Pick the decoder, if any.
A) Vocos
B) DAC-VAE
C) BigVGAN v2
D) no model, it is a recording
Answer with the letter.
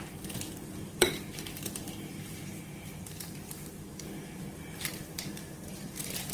C